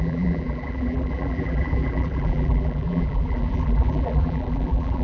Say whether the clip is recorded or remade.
remade